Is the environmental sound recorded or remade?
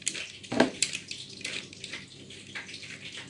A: recorded